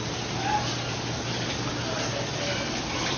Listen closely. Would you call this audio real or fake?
real